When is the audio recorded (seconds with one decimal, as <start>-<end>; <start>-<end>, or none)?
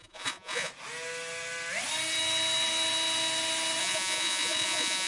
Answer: 0.7-3.8